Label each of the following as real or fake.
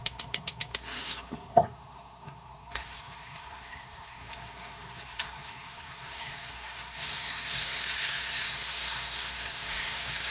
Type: fake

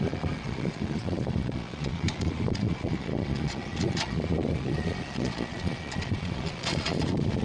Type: fake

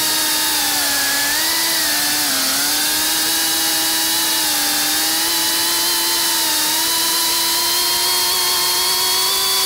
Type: real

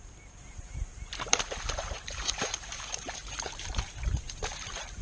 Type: fake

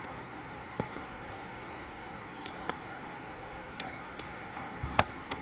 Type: fake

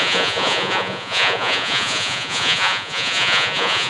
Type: fake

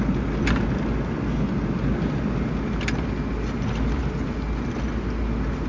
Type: real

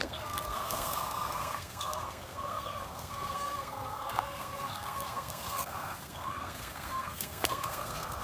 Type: fake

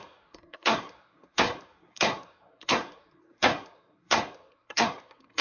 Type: fake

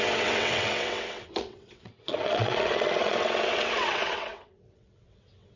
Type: fake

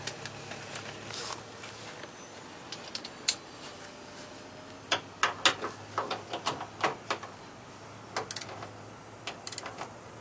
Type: real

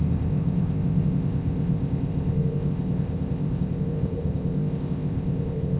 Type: fake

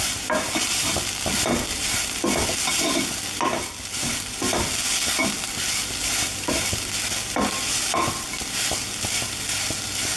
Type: real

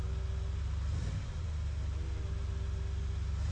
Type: real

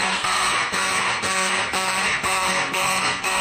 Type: fake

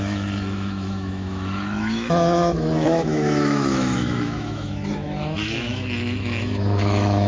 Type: fake